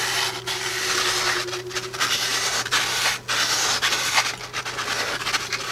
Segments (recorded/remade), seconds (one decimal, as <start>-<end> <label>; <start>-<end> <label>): 0.0-5.7 recorded